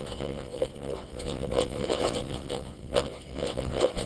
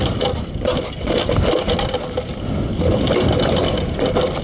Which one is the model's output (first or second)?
first